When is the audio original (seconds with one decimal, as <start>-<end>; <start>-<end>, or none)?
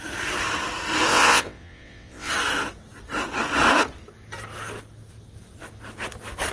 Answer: 0.0-1.1; 2.3-6.5